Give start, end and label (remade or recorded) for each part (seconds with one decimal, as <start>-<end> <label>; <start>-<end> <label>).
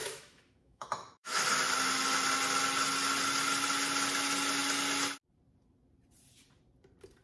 0.0-1.4 remade; 1.4-7.2 recorded